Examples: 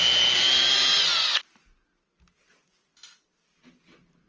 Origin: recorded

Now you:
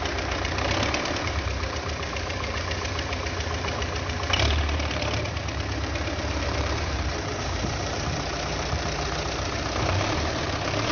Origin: remade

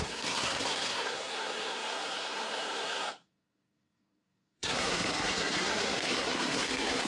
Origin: remade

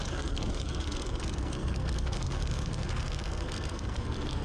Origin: remade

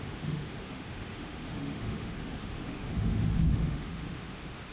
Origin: remade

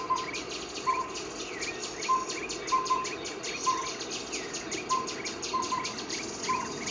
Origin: recorded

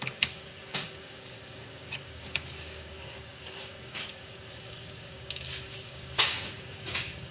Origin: remade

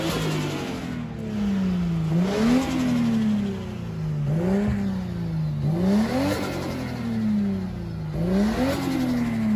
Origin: recorded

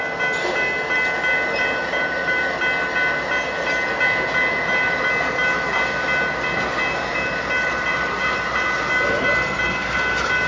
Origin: recorded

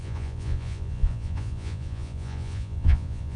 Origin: remade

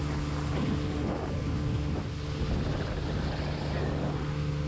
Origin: recorded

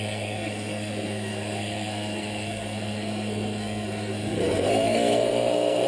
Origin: remade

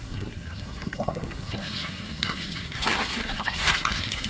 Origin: remade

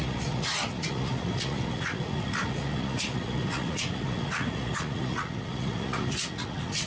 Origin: remade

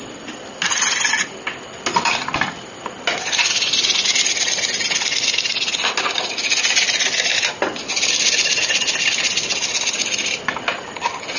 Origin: recorded